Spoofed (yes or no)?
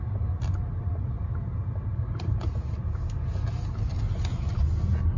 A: no